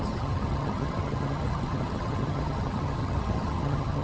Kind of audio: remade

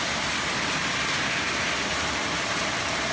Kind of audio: recorded